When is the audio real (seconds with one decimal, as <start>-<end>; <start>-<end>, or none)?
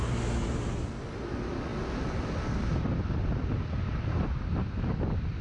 0.0-5.4